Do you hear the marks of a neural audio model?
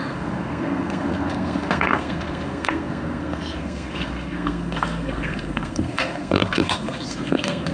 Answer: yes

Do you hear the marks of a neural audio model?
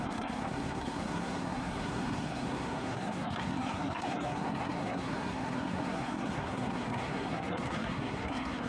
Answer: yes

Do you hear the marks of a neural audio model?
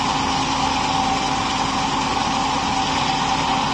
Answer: no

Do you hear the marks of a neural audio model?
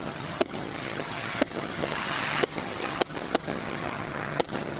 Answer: yes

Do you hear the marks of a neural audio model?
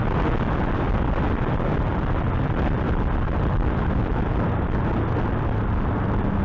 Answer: no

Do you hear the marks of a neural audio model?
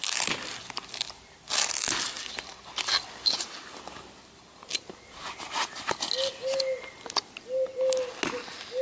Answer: no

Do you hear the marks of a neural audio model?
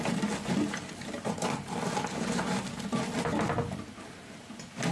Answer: no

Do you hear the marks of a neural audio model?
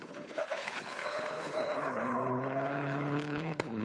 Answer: yes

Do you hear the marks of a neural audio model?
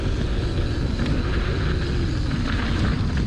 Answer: no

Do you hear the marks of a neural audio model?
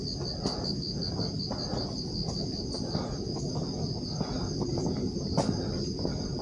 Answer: no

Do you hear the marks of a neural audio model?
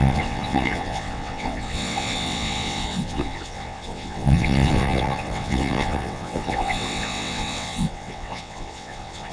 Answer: yes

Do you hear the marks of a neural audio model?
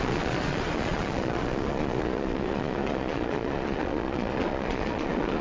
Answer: yes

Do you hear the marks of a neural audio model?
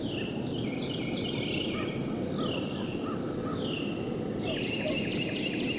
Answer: no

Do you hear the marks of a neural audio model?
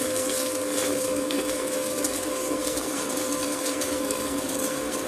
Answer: yes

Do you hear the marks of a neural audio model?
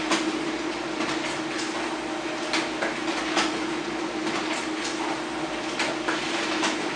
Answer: no